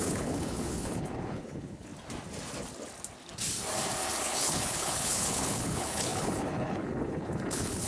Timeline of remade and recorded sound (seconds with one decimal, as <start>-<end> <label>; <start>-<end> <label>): 0.0-1.9 remade; 1.9-4.2 recorded; 4.2-7.9 remade